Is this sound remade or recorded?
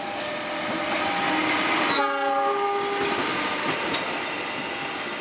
recorded